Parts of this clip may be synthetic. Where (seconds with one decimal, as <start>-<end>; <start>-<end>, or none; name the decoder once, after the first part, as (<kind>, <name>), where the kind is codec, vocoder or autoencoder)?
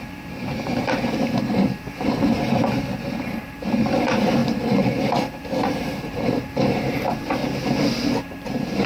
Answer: 0.0-7.4 (vocoder, BigVGAN v2); 8.2-8.9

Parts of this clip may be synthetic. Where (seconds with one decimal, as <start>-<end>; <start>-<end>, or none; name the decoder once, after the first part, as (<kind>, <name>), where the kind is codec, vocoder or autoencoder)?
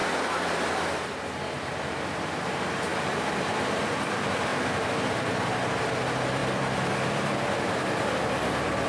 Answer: 0.0-4.5 (vocoder, BigVGAN v2); 5.7-8.9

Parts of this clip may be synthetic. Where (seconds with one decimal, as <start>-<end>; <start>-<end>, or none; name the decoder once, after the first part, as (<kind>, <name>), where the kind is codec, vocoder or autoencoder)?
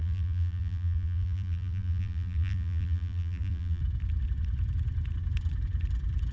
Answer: 0.0-3.8 (vocoder, BigVGAN v2)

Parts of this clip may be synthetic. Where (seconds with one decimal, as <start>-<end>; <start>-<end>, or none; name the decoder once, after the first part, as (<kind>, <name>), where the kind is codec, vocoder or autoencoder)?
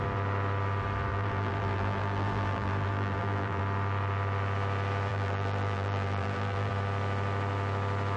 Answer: 1.1-3.6 (vocoder, BigVGAN v2); 5.1-6.7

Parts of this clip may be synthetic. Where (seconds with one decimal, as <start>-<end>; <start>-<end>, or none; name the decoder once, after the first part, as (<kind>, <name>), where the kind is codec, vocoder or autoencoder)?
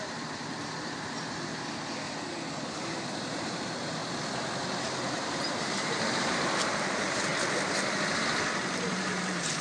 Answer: 0.0-1.5 (vocoder, BigVGAN v2); 2.7-4.0; 4.8-7.3; 8.9-9.6